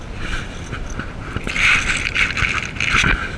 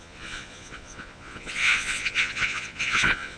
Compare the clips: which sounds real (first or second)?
first